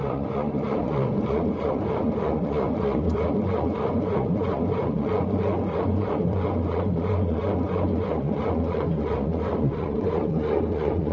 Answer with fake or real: fake